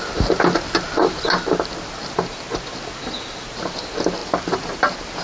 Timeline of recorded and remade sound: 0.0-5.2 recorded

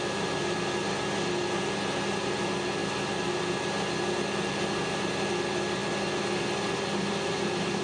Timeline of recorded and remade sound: 0.0-7.8 recorded

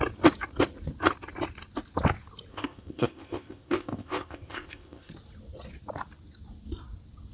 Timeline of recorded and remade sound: 0.0-2.5 recorded; 2.5-5.1 remade; 5.1-7.3 recorded

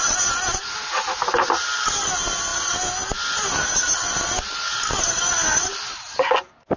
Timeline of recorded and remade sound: 0.0-6.8 recorded